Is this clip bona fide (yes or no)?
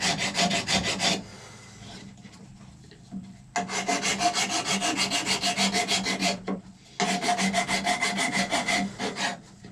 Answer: yes